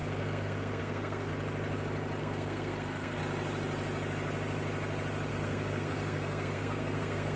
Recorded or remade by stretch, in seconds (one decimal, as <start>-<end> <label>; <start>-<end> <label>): 0.0-1.3 remade; 1.3-2.2 recorded; 2.2-3.2 remade; 3.2-5.3 recorded; 5.3-7.4 remade